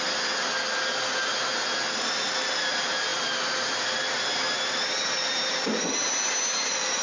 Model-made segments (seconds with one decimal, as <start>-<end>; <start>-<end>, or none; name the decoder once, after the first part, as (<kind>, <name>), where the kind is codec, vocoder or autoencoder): none